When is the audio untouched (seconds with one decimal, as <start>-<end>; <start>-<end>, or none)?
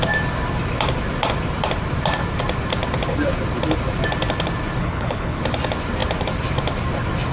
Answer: 0.0-4.8; 5.4-7.3